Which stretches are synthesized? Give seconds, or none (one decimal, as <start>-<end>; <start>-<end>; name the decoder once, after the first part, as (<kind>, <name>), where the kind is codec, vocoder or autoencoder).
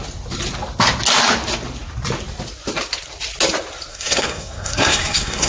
3.9-5.5 (codec, SNAC)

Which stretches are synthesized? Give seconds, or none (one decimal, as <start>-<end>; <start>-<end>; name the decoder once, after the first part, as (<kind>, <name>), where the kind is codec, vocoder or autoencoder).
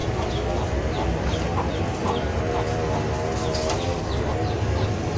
none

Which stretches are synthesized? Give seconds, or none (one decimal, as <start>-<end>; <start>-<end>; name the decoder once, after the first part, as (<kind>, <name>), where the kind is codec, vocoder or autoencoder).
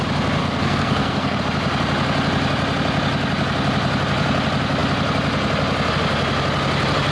0.4-1.4 (codec, SNAC)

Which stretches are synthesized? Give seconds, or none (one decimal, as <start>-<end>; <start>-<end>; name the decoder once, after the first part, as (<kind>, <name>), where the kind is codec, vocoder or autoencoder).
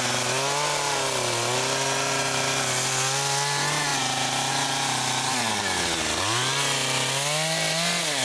none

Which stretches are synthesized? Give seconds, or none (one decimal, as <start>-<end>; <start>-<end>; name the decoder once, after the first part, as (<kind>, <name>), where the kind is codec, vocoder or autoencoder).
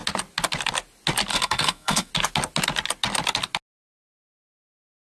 1.3-2.1 (codec, SNAC)